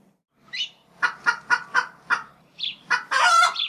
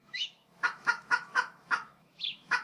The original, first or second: first